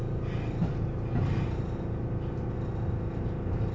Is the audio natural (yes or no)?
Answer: yes